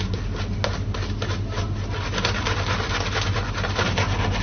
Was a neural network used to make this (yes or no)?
no